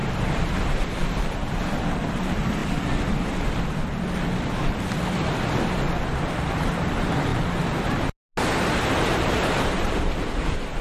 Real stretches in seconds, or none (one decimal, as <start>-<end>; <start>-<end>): 0.0-0.6; 2.6-6.1; 7.3-8.9